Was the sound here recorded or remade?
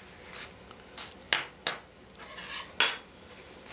recorded